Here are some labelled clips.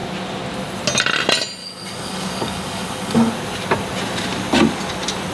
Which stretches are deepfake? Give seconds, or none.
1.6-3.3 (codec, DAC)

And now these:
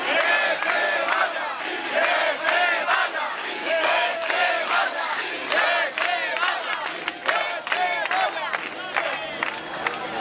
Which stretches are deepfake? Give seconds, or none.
3.4-5.3 (codec, DAC)

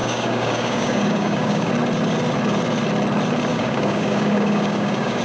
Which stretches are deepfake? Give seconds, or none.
0.0-1.7 (codec, DAC); 3.5-5.2

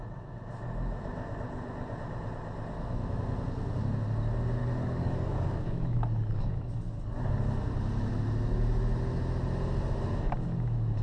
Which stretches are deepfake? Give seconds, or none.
4.6-7.3 (codec, DAC)

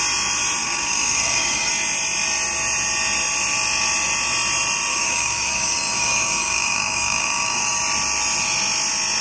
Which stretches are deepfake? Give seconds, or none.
0.6-1.7 (codec, DAC); 4.9-7.8

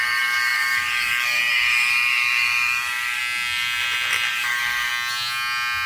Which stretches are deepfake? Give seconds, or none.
0.0-3.2 (codec, DAC); 4.3-4.9